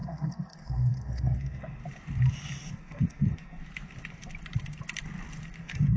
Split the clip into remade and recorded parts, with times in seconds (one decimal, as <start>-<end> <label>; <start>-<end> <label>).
0.0-1.8 remade; 1.8-2.7 recorded; 2.7-3.6 remade; 3.6-5.6 recorded; 5.6-6.0 remade